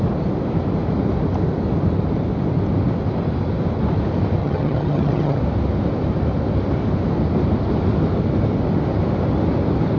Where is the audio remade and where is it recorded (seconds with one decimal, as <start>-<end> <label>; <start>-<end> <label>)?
0.0-4.4 recorded; 4.4-5.4 remade; 5.4-10.0 recorded

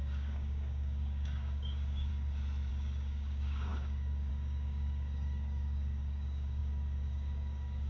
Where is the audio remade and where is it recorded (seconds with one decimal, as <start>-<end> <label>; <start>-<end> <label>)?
0.0-2.1 remade; 2.1-2.7 recorded; 2.7-7.9 remade

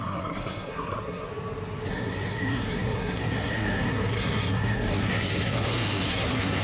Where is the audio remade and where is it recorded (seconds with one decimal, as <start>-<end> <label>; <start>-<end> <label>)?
0.0-1.3 remade; 1.3-1.9 recorded; 1.9-6.6 remade

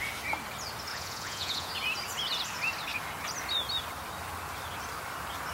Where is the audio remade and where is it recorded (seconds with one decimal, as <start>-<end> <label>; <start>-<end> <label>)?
0.0-0.9 recorded; 0.9-1.7 remade; 1.7-5.5 recorded

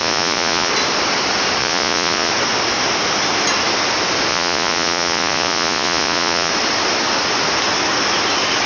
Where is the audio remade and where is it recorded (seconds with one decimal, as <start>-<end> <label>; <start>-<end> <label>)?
0.0-0.7 remade; 0.7-1.6 recorded; 1.6-2.3 remade; 2.3-4.3 recorded; 4.3-6.5 remade; 6.5-8.7 recorded